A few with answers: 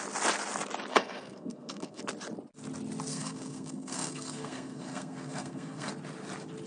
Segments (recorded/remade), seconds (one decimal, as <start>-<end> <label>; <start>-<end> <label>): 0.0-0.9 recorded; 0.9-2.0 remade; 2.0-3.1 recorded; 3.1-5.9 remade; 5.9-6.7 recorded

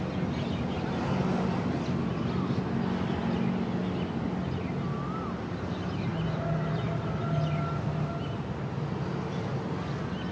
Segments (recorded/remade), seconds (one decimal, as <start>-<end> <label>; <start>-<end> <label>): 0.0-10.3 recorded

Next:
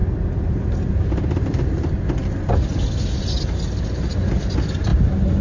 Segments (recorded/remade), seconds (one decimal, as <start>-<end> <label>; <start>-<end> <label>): 0.0-5.4 recorded

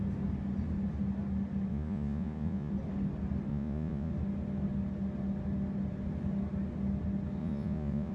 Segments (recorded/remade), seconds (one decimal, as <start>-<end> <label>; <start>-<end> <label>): 0.0-1.7 recorded; 1.7-2.7 remade; 2.7-3.5 recorded; 3.5-4.1 remade; 4.1-7.4 recorded; 7.4-8.1 remade